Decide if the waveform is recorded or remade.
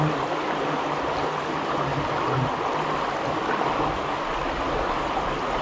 recorded